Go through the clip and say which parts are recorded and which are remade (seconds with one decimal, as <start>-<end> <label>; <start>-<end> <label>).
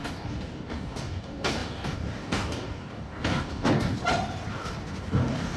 0.0-4.0 remade; 4.0-4.5 recorded; 4.5-5.6 remade